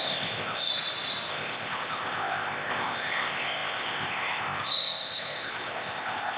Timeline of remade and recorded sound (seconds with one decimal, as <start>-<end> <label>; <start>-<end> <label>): 0.0-0.7 remade; 0.7-1.3 recorded; 1.3-6.4 remade